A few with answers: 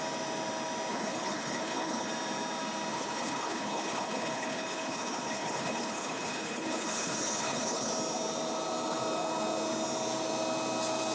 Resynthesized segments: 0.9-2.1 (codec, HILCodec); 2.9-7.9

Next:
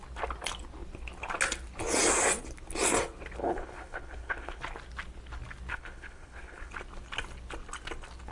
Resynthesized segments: 3.4-4.6 (codec, HILCodec); 5.7-6.7

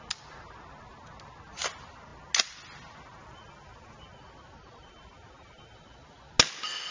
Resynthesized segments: none

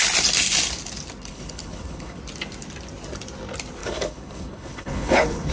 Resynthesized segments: 1.3-2.2 (codec, HILCodec); 3.8-5.5

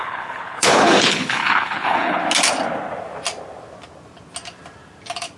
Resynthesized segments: 0.0-2.2 (codec, HILCodec)

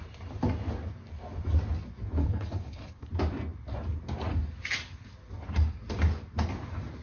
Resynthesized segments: 2.2-3.1 (codec, HILCodec)